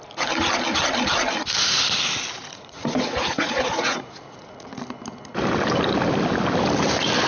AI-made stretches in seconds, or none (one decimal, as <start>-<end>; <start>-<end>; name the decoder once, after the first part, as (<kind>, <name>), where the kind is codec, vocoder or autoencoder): 2.4-4.8 (vocoder, Vocos)